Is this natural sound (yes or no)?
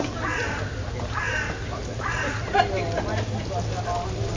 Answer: yes